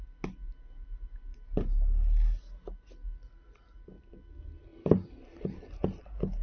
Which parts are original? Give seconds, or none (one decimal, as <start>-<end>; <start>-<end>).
0.0-4.7; 5.6-6.4